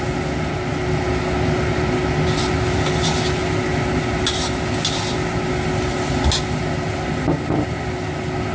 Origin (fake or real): real